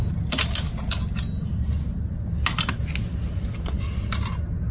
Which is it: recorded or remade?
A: recorded